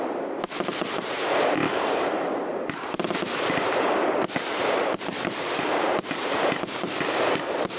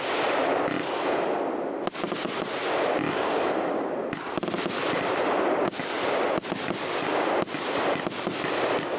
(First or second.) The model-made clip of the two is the first